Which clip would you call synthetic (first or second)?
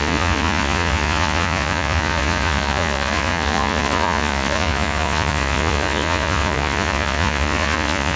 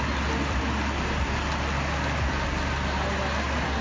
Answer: first